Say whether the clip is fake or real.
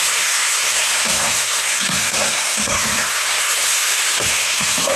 fake